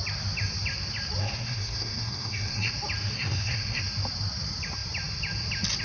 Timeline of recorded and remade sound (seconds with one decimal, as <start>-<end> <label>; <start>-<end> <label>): 0.0-1.2 recorded; 1.2-2.7 remade; 2.7-3.1 recorded; 3.1-3.8 remade; 3.8-5.8 recorded